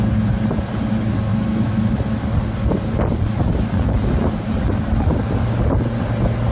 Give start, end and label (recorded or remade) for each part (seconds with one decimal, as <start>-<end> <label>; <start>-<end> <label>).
0.0-1.3 recorded; 1.3-1.9 remade; 1.9-6.5 recorded

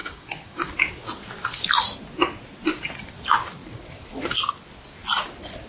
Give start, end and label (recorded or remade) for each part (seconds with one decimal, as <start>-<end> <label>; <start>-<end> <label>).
0.0-0.7 remade; 0.7-5.7 recorded